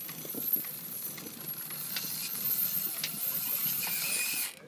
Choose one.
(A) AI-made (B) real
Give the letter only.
B